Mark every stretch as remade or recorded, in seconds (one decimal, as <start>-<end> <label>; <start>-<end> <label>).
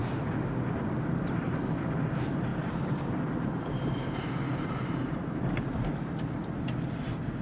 0.0-2.5 recorded; 2.5-6.0 remade; 6.0-7.4 recorded